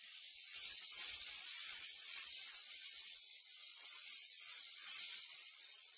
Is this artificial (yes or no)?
yes